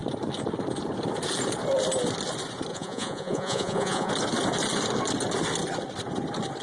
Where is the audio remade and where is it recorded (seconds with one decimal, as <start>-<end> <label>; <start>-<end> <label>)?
0.0-2.7 recorded; 2.7-4.1 remade; 4.1-6.6 recorded